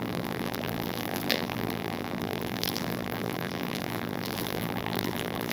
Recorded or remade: remade